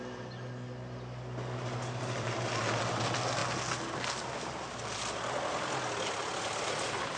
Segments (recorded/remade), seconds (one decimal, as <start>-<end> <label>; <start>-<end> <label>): 0.0-7.2 recorded